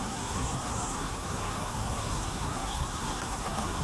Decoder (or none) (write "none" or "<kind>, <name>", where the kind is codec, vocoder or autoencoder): codec, SNAC